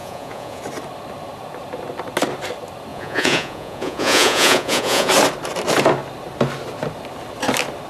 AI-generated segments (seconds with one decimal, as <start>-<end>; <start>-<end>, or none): 0.0-0.6; 2.9-5.1